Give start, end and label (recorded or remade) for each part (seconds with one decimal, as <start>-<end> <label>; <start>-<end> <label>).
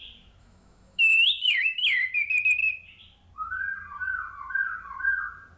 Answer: 0.0-0.4 recorded; 0.4-2.1 remade; 2.1-5.6 recorded